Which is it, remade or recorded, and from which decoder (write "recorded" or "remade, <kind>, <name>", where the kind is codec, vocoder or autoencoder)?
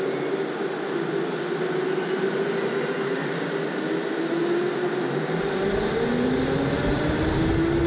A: recorded